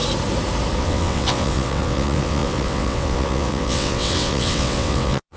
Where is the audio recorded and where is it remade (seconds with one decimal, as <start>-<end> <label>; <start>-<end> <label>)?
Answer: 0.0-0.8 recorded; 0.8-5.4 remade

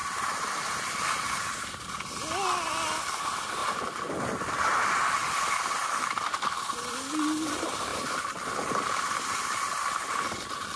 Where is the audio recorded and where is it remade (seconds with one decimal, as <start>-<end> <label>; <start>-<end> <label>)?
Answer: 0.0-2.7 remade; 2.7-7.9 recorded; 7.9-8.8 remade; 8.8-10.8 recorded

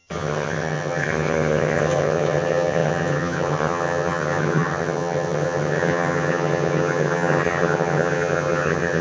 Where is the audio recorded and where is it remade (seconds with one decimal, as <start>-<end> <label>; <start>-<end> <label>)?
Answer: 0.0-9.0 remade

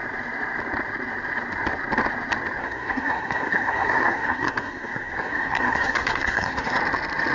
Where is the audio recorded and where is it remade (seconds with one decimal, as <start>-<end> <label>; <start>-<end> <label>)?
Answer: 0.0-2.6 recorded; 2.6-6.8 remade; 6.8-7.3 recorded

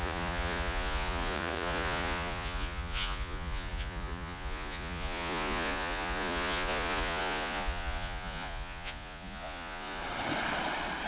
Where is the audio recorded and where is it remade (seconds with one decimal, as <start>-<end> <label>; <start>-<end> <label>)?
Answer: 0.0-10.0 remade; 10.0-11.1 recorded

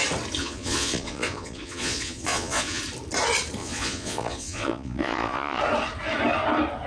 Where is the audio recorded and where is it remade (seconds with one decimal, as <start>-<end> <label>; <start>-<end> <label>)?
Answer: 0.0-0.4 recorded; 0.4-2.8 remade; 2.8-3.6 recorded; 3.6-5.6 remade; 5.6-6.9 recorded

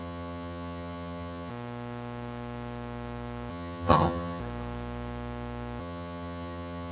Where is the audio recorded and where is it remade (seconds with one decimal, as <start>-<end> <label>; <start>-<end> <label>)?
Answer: 0.0-1.5 remade; 1.5-3.5 recorded; 3.5-4.4 remade; 4.4-5.8 recorded; 5.8-6.9 remade

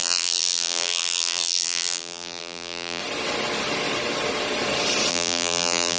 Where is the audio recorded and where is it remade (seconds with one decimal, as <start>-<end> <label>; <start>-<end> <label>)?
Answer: 0.0-3.0 remade; 3.0-5.1 recorded; 5.1-6.0 remade